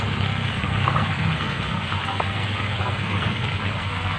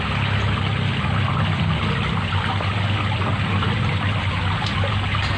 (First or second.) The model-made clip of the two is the first